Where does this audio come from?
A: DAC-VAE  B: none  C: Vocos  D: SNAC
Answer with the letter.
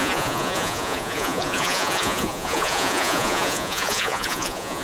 C